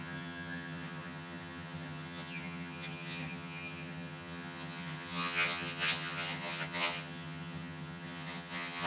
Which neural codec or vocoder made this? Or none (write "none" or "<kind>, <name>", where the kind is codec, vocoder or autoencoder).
vocoder, HiFi-GAN